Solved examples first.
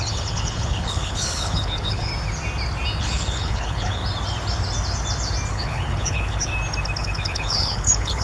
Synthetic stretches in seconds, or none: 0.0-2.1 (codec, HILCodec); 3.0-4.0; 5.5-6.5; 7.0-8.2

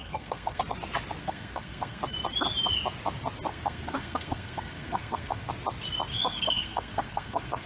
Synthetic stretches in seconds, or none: 0.0-0.6 (codec, SNAC); 1.2-2.0; 3.5-5.5; 6.1-7.7

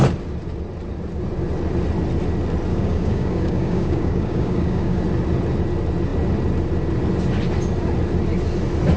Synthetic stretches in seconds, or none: 2.7-5.0 (codec, DAC)

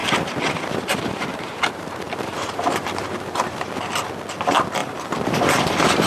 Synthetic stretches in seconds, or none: 0.0-3.7 (vocoder, BigVGAN v2); 4.8-6.1

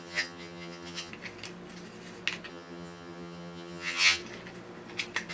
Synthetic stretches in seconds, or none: 0.0-1.1 (vocoder, HiFi-GAN); 2.5-4.2